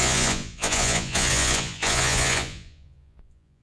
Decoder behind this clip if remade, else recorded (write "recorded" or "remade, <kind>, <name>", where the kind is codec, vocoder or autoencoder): remade, vocoder, Vocos